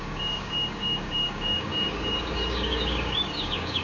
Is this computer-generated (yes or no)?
yes